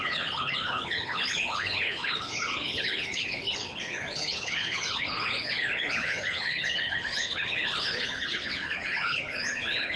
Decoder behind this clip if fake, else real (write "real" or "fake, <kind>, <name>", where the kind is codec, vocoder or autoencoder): fake, codec, HILCodec